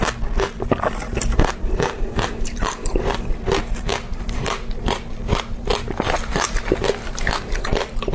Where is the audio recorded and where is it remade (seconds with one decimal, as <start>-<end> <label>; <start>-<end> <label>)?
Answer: 0.0-8.1 recorded